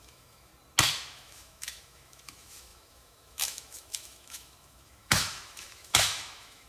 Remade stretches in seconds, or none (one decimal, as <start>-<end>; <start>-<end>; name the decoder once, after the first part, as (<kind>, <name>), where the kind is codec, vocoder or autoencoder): 0.0-0.5 (autoencoder, DAC-VAE); 1.0-6.7